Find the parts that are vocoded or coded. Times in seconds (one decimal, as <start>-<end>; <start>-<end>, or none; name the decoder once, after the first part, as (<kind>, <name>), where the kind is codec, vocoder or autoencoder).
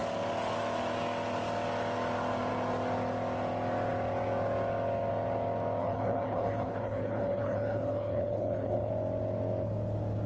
5.8-8.9 (codec, HILCodec)